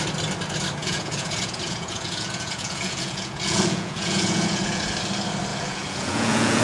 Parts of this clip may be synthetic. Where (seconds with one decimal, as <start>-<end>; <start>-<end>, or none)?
0.8-4.8; 5.5-6.6